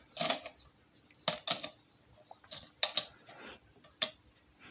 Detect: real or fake real